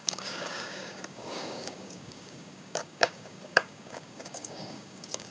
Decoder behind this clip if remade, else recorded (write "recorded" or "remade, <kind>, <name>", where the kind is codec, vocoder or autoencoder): remade, codec, DAC